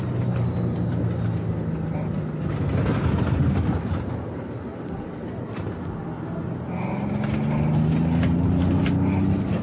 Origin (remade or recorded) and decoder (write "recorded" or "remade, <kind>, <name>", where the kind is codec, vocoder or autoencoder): recorded